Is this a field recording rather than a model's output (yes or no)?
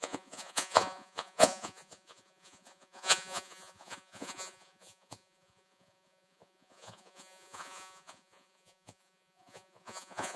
no